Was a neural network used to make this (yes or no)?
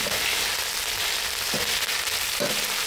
no